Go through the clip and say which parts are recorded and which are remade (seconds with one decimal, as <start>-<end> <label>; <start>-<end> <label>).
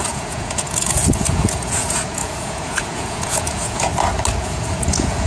0.0-3.9 remade; 3.9-4.4 recorded; 4.4-5.3 remade